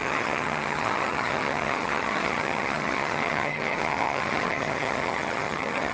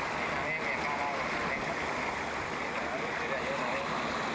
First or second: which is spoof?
first